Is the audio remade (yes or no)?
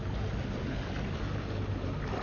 no